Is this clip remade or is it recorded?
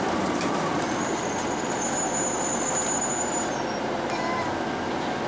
recorded